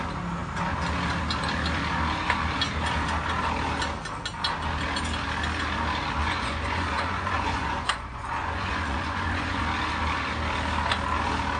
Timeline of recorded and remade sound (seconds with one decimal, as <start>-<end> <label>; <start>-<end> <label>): 0.0-6.2 recorded; 6.2-9.6 remade; 9.6-11.6 recorded

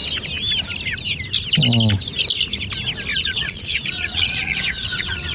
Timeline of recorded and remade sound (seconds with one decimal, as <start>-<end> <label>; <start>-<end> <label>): 0.0-3.2 recorded; 3.2-5.3 remade

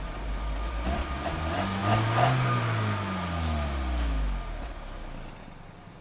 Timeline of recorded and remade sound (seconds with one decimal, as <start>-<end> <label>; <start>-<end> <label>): 0.0-6.0 recorded

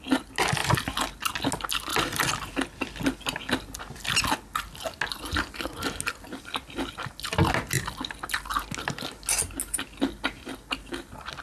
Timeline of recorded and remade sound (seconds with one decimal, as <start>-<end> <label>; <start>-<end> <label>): 0.0-11.4 recorded

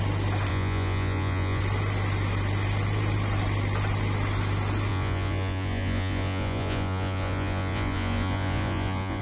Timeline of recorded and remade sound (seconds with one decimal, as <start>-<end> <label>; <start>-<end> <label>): 0.0-0.5 recorded; 0.5-1.6 remade; 1.6-4.9 recorded; 4.9-9.2 remade

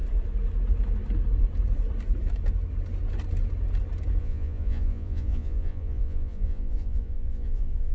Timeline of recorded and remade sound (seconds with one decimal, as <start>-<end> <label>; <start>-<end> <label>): 0.0-4.2 recorded; 4.2-7.9 remade